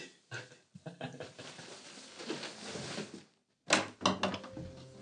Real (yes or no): yes